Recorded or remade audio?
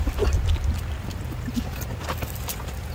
recorded